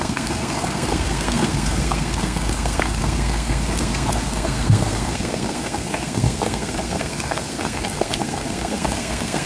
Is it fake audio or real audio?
fake